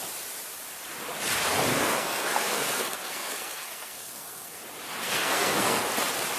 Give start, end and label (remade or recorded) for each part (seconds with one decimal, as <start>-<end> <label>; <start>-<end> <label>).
0.0-1.7 recorded; 1.7-4.6 remade; 4.6-5.0 recorded; 5.0-5.8 remade; 5.8-6.4 recorded